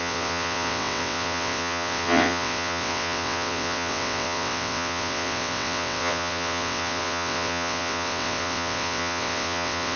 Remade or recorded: remade